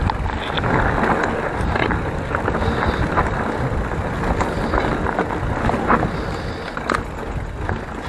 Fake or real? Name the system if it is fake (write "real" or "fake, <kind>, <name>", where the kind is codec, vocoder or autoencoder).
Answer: real